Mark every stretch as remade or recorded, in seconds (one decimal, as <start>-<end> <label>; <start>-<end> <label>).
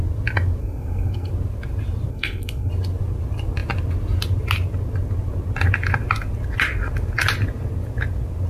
0.0-0.6 recorded; 0.6-1.3 remade; 1.3-2.1 recorded; 2.1-2.7 remade; 2.7-8.5 recorded